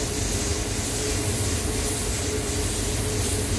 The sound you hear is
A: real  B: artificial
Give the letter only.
A